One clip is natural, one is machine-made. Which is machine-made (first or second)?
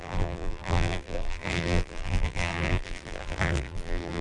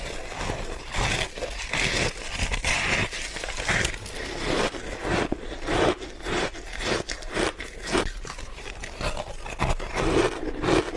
first